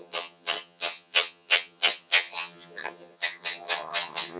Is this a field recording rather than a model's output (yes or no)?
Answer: no